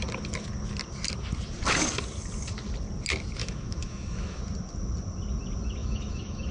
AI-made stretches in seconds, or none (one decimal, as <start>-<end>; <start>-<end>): 3.4-4.4; 5.8-6.5